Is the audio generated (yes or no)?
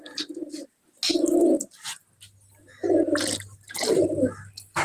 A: no